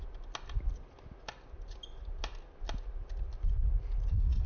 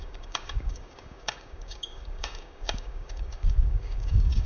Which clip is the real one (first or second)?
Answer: first